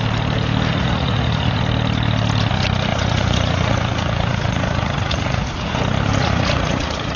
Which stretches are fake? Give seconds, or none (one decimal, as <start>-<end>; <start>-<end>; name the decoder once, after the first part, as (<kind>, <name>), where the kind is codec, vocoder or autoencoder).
0.7-1.6 (vocoder, Vocos); 2.9-5.8; 6.2-7.2